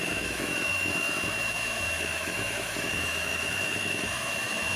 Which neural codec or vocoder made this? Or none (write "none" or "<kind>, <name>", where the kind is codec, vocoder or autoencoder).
autoencoder, DAC-VAE